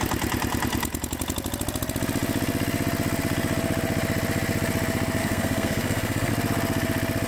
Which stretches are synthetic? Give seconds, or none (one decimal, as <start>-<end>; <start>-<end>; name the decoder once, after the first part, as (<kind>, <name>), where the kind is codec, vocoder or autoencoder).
5.2-6.3 (codec, SNAC)